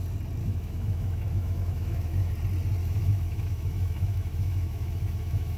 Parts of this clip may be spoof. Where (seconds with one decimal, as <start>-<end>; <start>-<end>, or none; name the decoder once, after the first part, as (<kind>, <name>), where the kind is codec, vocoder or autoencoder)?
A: 0.4-2.3 (autoencoder, DAC-VAE); 2.8-5.6